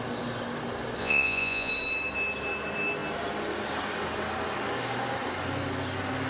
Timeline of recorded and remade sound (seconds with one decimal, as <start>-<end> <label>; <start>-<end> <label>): 0.0-1.0 recorded; 1.0-1.7 remade; 1.7-6.3 recorded